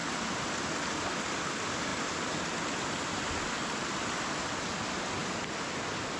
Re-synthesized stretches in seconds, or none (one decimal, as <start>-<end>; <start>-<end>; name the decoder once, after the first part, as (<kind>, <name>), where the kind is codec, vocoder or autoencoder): none